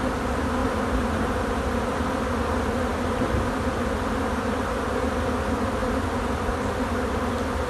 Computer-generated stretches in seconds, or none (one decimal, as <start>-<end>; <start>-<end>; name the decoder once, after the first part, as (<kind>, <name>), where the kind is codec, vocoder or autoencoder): none